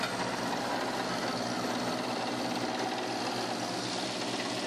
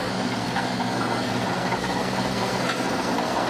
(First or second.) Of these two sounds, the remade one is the second